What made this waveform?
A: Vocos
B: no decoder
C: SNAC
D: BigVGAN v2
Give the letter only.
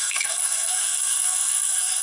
C